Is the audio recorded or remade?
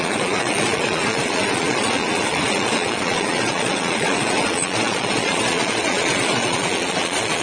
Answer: remade